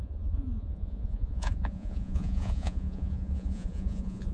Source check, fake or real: fake